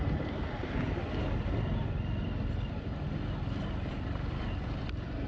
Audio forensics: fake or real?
real